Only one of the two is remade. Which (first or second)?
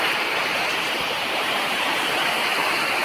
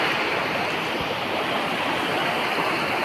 first